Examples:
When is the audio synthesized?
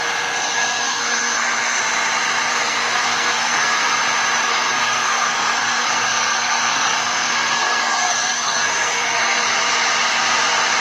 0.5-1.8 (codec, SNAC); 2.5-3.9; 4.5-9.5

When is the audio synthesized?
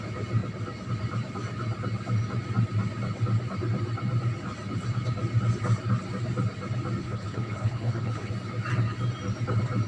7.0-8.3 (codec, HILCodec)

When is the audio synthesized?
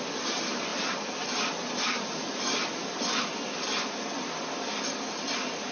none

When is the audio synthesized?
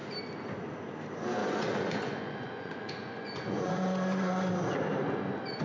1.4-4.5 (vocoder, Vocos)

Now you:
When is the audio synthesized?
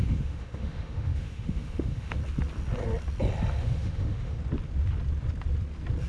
0.0-2.2 (autoencoder, DAC-VAE); 3.6-4.4